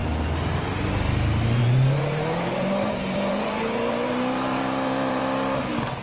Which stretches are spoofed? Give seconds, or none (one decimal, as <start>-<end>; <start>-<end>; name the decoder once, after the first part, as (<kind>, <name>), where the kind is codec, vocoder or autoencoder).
1.6-5.2 (vocoder, BigVGAN v2)